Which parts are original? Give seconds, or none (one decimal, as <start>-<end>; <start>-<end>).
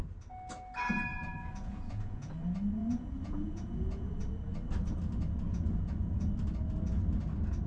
0.0-1.1; 2.3-2.8; 4.2-5.5; 6.3-7.7